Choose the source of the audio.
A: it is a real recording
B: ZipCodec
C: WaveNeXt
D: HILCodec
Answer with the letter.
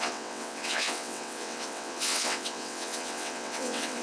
C